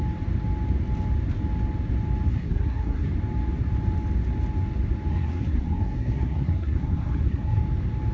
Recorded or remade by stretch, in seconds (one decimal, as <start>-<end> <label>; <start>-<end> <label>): 0.0-2.3 recorded; 2.3-3.1 remade; 3.1-5.1 recorded; 5.1-7.6 remade; 7.6-8.1 recorded